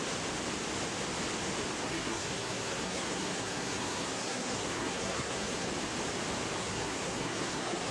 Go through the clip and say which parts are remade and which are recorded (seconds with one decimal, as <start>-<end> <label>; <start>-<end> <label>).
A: 0.0-1.8 recorded; 1.8-5.7 remade; 5.7-6.6 recorded; 6.6-7.9 remade